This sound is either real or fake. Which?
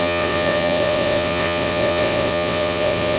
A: fake